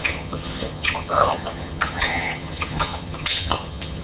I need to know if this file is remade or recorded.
remade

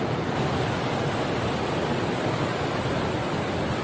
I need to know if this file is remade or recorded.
recorded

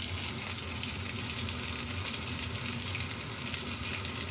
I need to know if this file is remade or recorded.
recorded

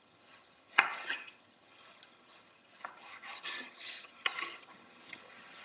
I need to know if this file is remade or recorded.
remade